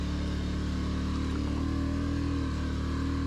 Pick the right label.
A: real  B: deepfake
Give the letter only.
A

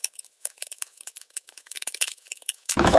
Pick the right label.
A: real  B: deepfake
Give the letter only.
B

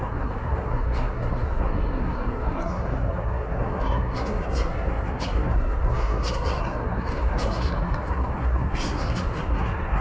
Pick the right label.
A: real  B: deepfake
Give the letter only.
B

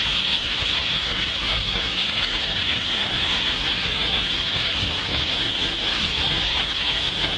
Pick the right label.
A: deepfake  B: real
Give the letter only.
A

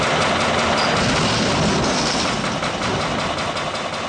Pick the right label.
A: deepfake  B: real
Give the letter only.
B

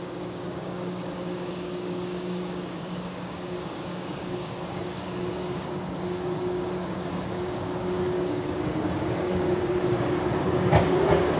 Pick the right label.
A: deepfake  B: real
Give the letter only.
A